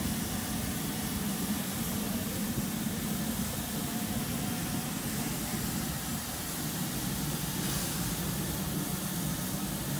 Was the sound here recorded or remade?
recorded